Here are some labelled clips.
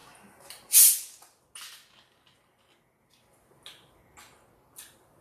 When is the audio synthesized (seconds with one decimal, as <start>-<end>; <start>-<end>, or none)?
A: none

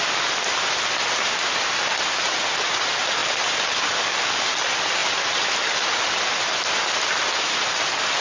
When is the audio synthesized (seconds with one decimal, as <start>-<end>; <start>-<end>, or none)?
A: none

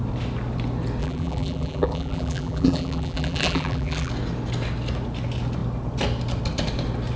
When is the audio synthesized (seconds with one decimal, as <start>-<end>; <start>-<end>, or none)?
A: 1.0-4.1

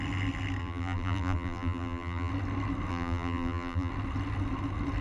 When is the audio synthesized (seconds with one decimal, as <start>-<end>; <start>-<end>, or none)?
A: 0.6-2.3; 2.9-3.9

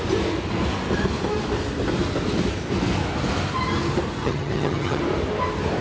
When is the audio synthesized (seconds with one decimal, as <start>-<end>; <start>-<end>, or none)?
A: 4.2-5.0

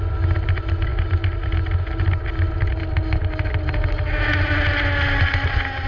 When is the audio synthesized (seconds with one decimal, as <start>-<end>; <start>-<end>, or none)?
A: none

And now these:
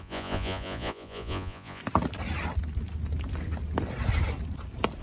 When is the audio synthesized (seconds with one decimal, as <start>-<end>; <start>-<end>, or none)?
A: 0.0-1.8

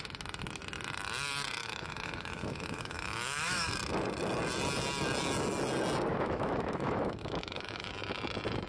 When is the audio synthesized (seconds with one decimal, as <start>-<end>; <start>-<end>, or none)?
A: 1.6-3.7; 6.1-7.9